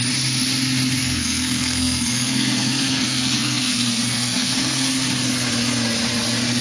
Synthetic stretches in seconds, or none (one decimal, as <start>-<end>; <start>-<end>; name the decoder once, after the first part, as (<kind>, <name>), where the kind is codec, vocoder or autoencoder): 1.0-4.9 (codec, SNAC)